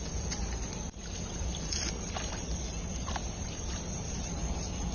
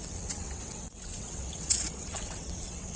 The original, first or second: first